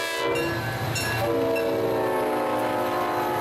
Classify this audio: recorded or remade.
recorded